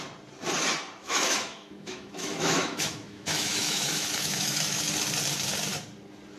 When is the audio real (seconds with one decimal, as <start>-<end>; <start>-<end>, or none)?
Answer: 0.0-1.0; 4.8-6.4